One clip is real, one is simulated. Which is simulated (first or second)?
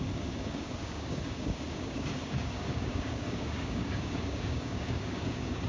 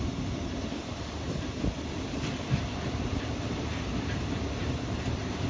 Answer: first